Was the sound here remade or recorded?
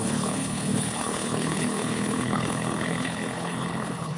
remade